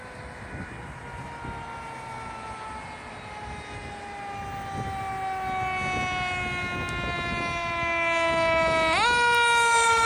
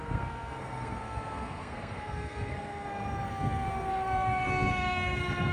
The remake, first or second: second